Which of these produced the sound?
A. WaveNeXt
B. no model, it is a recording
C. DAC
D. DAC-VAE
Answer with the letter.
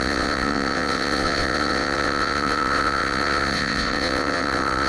A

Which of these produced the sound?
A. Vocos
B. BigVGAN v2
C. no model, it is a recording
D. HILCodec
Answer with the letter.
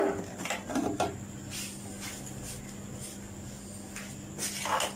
C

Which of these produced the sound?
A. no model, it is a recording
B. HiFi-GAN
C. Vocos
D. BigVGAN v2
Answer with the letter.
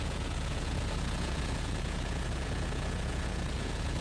C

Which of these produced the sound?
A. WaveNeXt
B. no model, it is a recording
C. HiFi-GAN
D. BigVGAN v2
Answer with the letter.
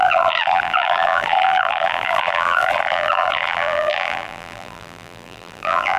D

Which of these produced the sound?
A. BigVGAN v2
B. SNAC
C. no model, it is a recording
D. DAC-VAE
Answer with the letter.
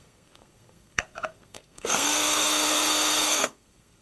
B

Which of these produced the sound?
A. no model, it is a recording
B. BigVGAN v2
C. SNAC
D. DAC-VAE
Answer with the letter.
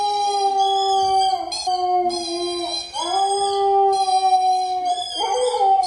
A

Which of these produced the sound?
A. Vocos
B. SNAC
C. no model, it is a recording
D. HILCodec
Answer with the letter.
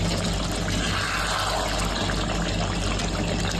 C